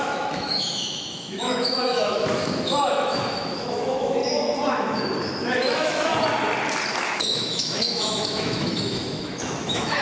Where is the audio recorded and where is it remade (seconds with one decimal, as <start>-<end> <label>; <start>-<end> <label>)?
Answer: 0.0-4.2 remade; 4.2-4.7 recorded; 4.7-6.1 remade; 6.1-7.1 recorded; 7.1-10.0 remade